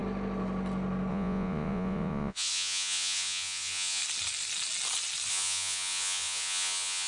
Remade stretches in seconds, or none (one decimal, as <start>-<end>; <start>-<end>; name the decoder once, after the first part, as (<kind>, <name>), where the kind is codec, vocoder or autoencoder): 1.1-4.0 (vocoder, Vocos); 5.3-7.1